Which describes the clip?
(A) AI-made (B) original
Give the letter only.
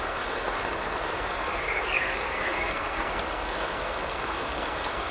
A